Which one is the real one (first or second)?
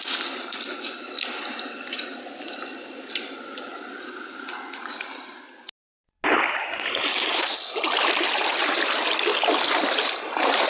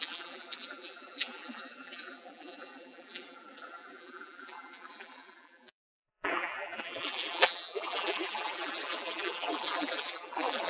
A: first